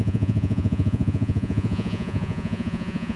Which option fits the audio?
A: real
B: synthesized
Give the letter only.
B